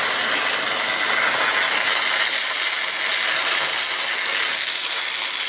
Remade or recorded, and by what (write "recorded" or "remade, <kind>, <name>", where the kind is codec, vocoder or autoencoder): recorded